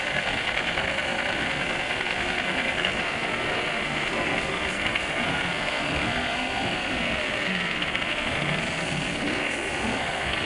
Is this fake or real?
fake